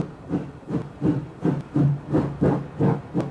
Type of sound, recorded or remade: recorded